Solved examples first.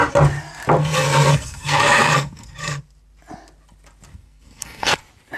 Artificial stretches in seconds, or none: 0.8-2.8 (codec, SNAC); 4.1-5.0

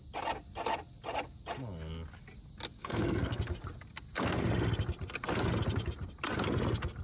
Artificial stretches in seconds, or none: 2.8-3.4 (codec, SNAC)

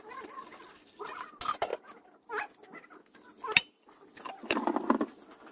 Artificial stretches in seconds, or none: none